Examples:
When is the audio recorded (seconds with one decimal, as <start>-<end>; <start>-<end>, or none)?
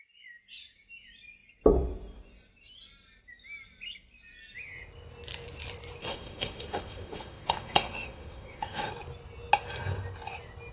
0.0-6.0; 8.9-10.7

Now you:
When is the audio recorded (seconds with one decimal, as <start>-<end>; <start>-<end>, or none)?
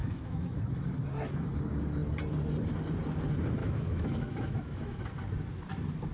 0.6-3.6; 5.0-6.1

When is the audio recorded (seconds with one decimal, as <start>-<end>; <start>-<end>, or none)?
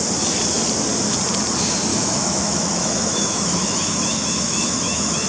0.0-1.9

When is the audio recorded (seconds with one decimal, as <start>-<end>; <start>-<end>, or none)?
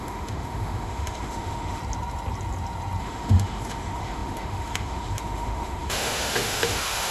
1.8-3.0